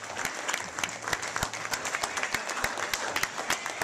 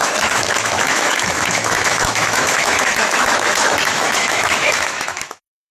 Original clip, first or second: first